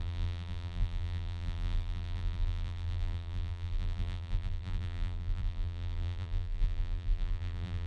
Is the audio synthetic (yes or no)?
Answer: yes